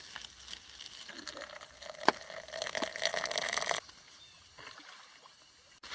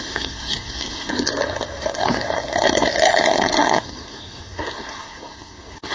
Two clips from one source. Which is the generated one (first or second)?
second